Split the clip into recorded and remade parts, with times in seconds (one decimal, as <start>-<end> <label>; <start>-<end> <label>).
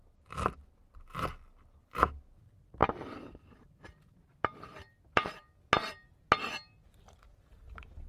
0.0-8.1 recorded